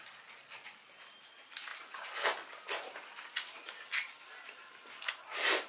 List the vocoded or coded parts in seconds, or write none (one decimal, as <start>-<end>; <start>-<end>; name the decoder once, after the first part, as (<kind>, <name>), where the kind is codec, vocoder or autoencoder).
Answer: none